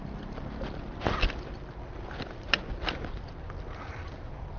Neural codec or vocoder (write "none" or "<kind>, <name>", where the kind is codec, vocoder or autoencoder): none